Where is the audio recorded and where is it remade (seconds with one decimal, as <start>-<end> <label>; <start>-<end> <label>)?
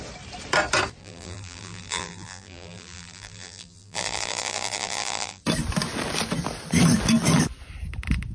0.0-1.0 recorded; 1.0-5.4 remade; 5.4-8.3 recorded